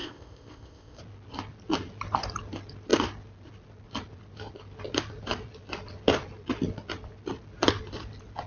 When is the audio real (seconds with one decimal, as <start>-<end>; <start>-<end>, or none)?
1.0-8.5